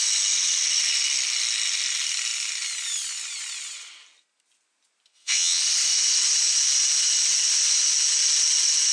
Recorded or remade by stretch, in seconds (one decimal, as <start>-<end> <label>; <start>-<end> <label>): 0.0-5.1 recorded; 5.1-5.6 remade; 5.6-8.9 recorded